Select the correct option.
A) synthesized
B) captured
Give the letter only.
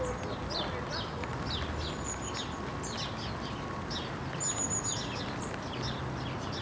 B